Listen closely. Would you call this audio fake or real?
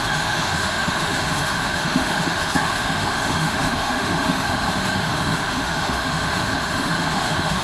fake